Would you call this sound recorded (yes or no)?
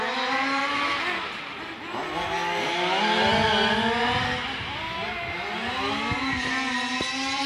yes